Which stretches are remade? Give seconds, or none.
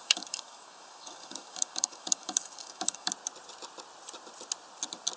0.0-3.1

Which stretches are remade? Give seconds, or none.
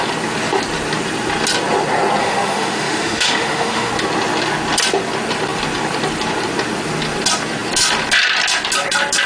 2.2-3.9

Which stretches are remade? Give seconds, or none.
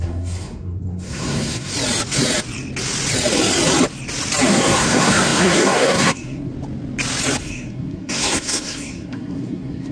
0.0-1.7; 4.5-6.5; 7.4-9.9